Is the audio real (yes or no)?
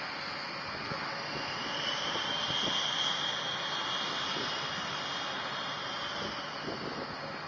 yes